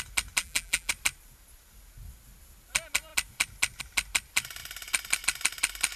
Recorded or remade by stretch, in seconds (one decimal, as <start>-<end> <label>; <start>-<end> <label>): 0.0-0.4 recorded; 0.4-0.9 remade; 0.9-6.0 recorded